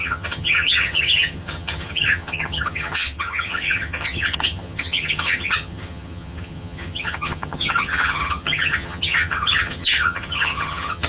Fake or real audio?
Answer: fake